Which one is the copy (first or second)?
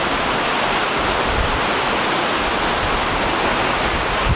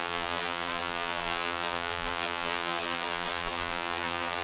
second